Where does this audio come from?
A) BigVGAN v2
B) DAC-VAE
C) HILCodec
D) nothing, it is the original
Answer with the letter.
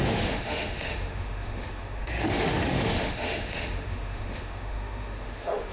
B